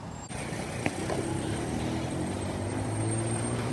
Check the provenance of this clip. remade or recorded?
remade